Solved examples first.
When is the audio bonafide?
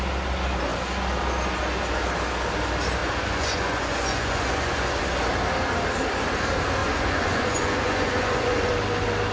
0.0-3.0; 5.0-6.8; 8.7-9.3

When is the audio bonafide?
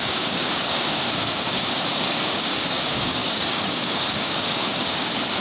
none